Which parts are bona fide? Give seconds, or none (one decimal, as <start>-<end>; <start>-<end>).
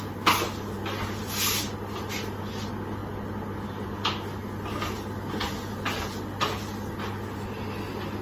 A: 0.0-8.2